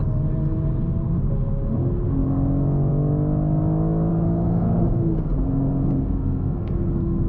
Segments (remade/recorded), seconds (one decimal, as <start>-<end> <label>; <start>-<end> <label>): 0.0-4.1 recorded; 4.1-7.3 remade